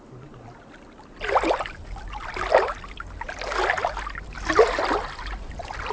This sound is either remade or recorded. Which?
recorded